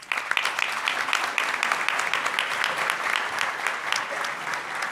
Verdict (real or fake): real